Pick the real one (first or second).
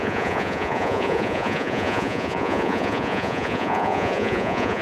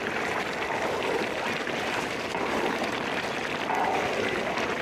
second